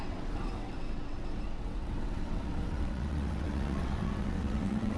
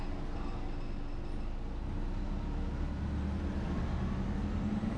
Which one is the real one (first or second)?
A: second